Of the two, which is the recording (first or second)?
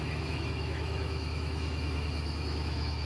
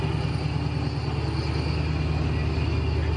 second